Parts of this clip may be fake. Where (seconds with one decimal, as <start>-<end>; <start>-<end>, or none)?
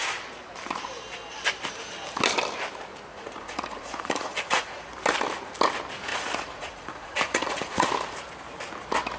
3.1-4.9; 6.1-7.9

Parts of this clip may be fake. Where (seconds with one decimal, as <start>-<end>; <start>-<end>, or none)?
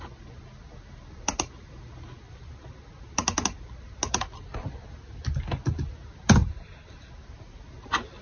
none